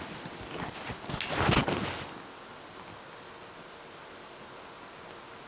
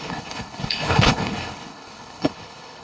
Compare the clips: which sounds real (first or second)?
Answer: first